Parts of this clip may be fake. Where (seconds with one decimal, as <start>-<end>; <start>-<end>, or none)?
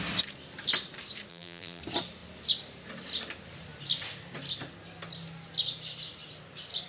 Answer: 1.3-1.8